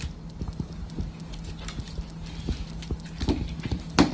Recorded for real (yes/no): yes